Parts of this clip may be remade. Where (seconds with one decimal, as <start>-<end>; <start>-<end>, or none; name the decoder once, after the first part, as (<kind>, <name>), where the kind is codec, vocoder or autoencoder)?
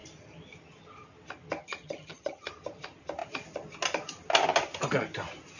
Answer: 1.6-2.5 (vocoder, HiFi-GAN)